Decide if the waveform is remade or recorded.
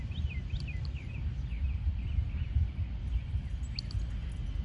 recorded